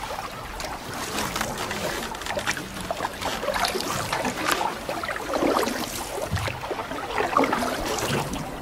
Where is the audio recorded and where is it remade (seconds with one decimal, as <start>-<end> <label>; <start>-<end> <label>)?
0.0-8.6 recorded

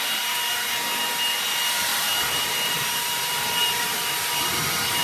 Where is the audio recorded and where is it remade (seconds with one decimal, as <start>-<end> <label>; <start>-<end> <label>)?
0.0-1.9 recorded; 1.9-3.8 remade; 3.8-5.0 recorded

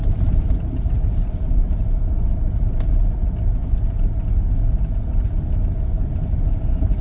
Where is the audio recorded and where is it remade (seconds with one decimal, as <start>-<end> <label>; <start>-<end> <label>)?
0.0-1.6 remade; 1.6-3.6 recorded; 3.6-4.1 remade; 4.1-7.0 recorded

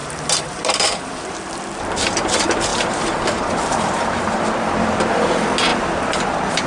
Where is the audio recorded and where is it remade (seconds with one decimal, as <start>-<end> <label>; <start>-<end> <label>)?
0.0-1.3 remade; 1.3-2.7 recorded; 2.7-5.1 remade; 5.1-5.7 recorded; 5.7-6.7 remade

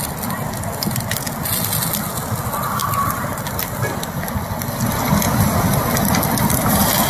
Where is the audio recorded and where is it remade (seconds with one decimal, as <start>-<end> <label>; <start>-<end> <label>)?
0.0-2.8 recorded; 2.8-3.5 remade; 3.5-7.1 recorded

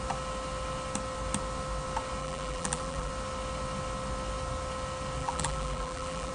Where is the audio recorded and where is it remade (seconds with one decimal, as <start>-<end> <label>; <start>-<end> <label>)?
0.0-2.2 recorded; 2.2-3.1 remade; 3.1-5.2 recorded; 5.2-6.3 remade